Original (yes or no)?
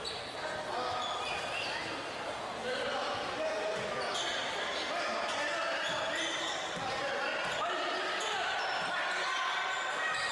yes